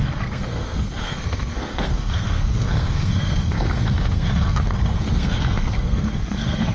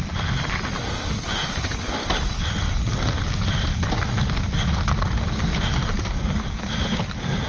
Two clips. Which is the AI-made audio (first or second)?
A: first